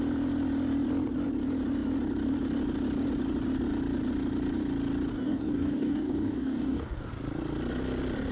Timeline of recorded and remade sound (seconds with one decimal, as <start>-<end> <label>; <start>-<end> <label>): 0.0-5.1 recorded; 5.1-7.1 remade; 7.1-8.3 recorded